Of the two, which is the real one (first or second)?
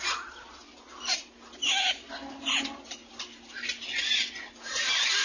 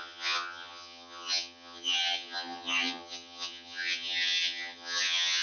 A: first